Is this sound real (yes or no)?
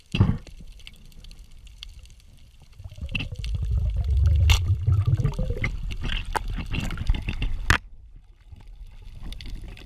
yes